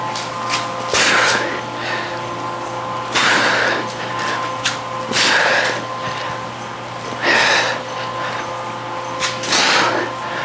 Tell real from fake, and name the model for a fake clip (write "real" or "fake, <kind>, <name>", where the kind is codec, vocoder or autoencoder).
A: real